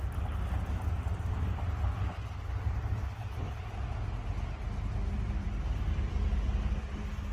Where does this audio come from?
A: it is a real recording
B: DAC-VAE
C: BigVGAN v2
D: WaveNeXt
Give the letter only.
A